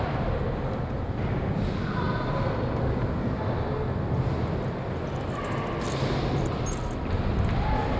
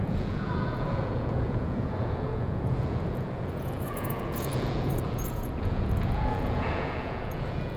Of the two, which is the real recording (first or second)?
first